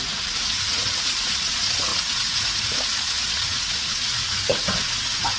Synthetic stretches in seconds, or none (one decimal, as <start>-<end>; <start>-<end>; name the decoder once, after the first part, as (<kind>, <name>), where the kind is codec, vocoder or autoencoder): 0.0-5.4 (vocoder, Vocos)